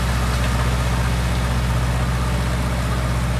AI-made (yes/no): no